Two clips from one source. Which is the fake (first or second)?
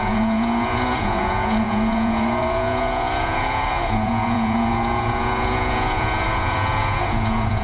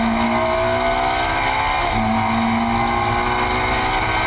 first